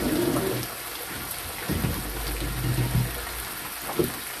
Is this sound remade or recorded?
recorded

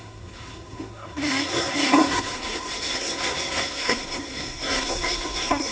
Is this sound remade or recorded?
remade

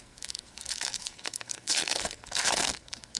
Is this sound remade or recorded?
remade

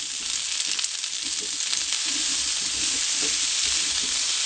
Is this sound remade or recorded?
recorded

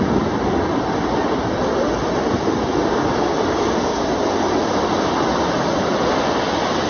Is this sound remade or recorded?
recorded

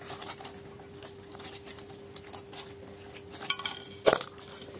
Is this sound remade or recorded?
recorded